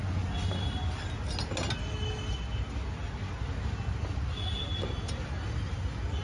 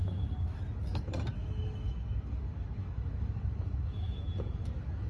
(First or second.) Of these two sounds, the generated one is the second